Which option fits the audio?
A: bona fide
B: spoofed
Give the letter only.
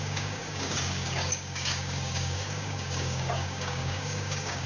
B